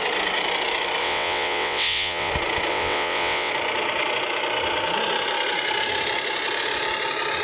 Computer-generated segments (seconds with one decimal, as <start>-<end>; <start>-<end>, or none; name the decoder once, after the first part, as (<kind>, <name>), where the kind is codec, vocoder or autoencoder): 1.0-2.3 (vocoder, WaveNeXt); 2.7-3.5